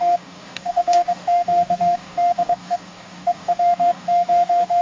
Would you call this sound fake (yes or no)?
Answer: yes